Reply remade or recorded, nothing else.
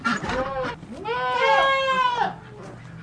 recorded